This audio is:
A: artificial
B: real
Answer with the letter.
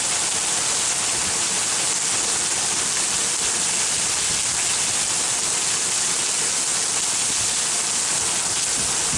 B